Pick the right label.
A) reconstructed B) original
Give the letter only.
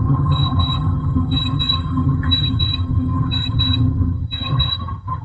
A